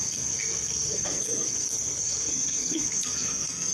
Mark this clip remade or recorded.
remade